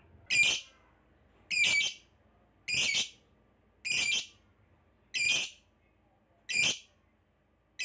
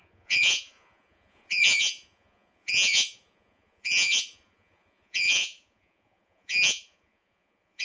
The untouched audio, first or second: first